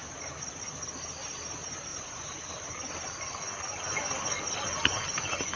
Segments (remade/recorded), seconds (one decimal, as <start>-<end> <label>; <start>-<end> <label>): 0.0-1.9 recorded; 1.9-2.6 remade; 2.6-5.6 recorded